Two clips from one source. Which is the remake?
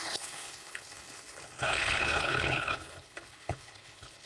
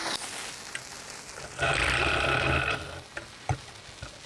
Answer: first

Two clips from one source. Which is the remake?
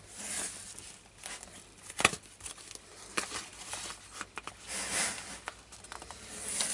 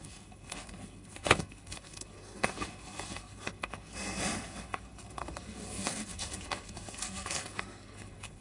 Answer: second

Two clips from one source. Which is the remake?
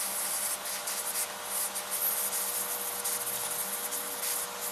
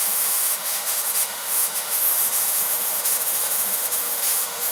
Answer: second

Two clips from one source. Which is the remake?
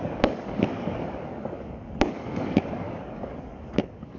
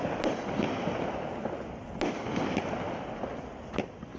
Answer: first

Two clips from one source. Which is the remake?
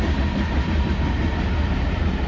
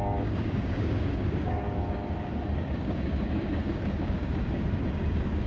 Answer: second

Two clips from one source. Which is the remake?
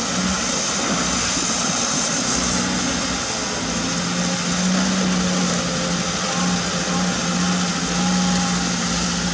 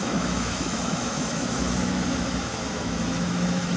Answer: second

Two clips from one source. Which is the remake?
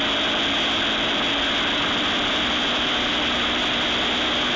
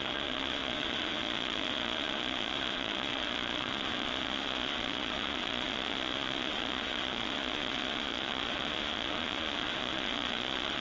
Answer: second